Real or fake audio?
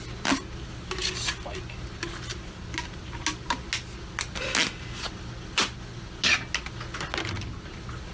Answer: real